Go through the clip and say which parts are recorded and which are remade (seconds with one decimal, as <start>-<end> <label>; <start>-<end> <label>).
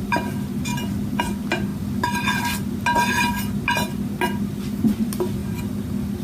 0.0-6.2 recorded